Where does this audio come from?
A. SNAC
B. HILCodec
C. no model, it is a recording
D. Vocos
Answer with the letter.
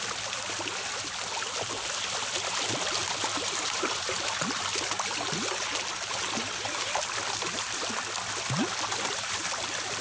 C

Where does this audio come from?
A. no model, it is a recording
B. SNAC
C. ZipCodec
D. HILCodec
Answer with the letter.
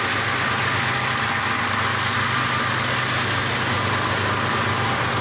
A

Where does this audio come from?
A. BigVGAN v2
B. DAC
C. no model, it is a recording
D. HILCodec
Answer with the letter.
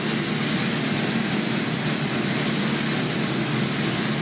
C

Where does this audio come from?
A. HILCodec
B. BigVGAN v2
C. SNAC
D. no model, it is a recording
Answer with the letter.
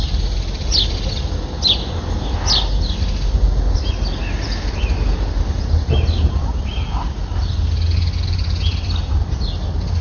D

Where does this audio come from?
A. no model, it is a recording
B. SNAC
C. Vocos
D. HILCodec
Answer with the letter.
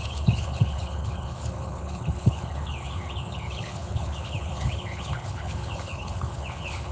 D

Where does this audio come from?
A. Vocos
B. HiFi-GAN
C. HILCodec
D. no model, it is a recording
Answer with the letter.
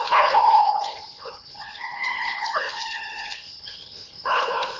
C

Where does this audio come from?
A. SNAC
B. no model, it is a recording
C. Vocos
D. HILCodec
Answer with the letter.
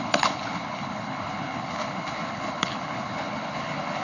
D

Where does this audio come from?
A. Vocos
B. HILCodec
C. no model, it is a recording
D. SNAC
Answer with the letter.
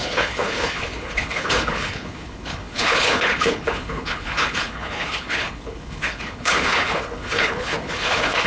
B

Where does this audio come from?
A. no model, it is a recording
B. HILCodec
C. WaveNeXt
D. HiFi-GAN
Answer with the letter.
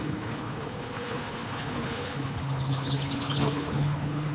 B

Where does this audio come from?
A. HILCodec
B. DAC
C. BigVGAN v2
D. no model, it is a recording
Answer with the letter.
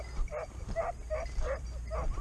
D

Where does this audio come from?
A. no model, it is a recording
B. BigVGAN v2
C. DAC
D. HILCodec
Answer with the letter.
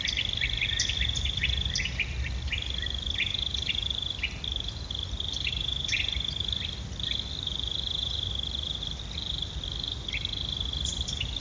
A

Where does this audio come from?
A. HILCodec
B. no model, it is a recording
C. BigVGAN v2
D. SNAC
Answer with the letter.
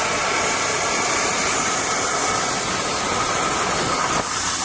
B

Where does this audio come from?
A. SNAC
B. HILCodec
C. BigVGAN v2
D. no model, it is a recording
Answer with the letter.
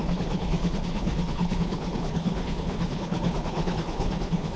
B